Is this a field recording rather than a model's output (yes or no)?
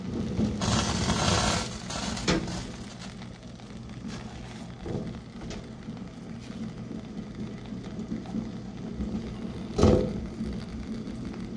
yes